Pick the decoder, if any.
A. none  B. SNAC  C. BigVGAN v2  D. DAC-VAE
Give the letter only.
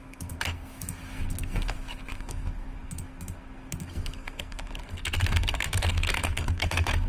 B